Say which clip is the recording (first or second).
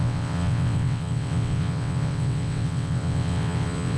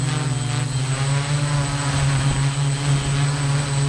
second